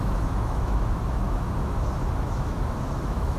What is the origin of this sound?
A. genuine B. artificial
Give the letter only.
B